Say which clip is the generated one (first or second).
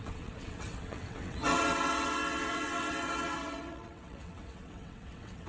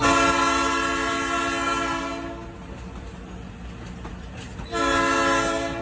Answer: first